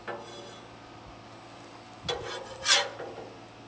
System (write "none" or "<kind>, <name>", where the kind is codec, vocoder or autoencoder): none